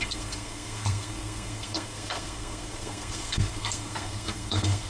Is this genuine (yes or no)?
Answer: no